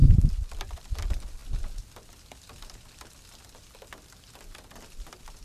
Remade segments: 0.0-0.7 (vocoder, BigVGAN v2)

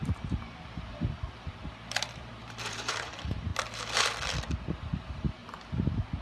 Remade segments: 0.0-3.5 (vocoder, BigVGAN v2); 4.6-5.4

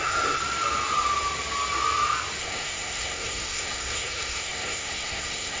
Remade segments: 0.0-0.4 (codec, SNAC); 2.4-5.6

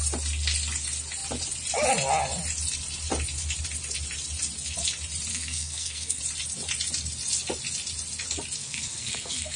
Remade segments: 5.3-6.2 (codec, SNAC); 8.6-9.6